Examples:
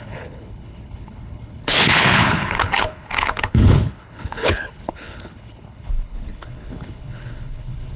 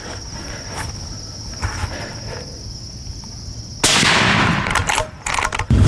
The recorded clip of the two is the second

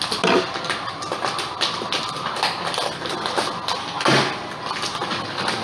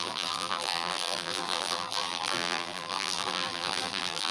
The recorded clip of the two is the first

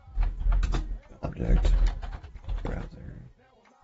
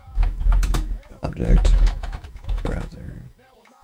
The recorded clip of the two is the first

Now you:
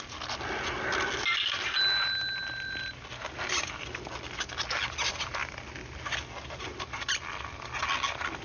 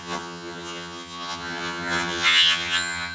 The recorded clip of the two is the first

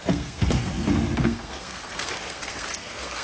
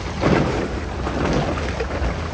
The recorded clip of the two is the second